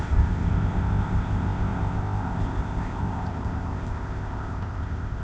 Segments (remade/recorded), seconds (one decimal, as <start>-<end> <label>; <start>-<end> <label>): 0.0-5.2 remade

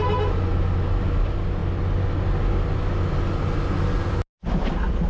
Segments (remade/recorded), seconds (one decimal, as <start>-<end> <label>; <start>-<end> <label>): 0.0-5.1 recorded

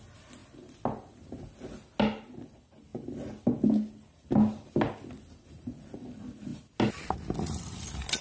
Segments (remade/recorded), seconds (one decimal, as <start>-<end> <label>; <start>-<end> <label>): 0.0-8.2 recorded

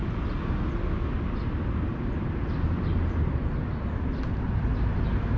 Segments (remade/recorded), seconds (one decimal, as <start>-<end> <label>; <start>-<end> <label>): 0.0-5.4 recorded